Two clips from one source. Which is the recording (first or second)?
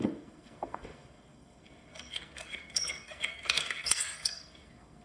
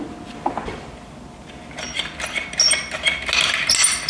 second